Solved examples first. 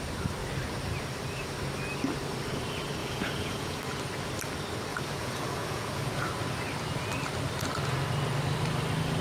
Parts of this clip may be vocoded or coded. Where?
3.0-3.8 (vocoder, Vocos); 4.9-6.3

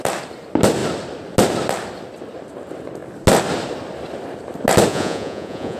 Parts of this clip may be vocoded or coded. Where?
4.9-5.8 (vocoder, Vocos)

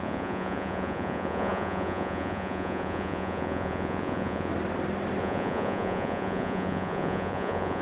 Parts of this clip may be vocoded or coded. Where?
0.0-4.5 (vocoder, Vocos); 5.2-7.8

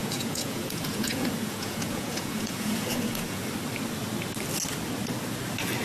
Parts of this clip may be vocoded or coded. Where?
0.0-3.5 (vocoder, Vocos)